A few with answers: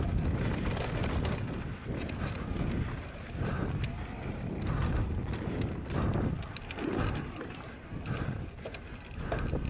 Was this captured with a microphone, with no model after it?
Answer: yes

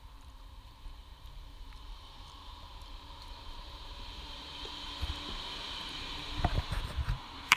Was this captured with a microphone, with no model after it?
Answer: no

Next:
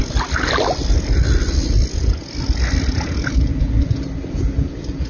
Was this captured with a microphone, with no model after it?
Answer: yes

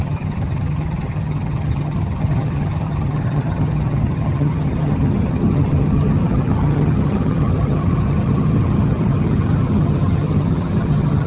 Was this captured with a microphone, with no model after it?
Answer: no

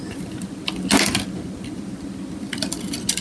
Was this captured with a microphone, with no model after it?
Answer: yes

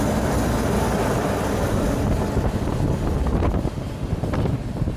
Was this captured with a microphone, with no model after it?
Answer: yes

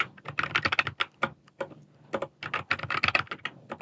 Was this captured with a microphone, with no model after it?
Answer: yes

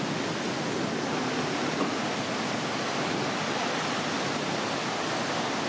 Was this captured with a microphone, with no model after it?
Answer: yes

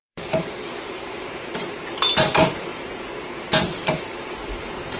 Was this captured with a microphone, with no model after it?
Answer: no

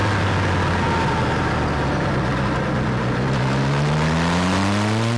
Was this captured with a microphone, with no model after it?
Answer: yes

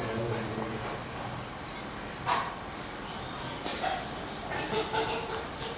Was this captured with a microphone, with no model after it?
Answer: yes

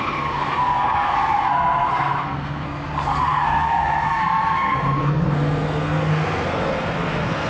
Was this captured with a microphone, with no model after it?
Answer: no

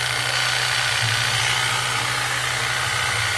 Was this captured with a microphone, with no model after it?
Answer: yes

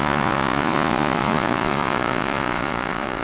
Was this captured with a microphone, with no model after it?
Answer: no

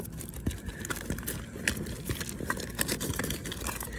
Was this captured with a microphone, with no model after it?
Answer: yes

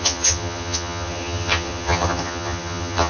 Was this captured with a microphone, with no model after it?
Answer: no